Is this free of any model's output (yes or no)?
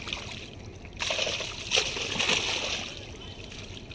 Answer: yes